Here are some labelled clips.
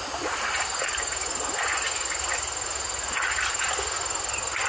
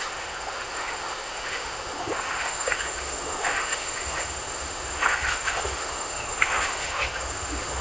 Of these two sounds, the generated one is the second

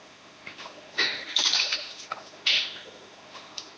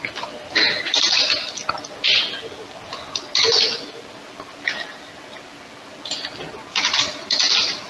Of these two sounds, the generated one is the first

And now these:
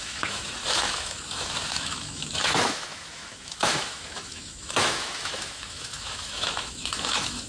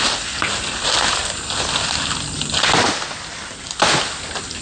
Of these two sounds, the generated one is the first